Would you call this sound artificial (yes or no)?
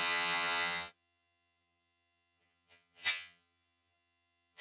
yes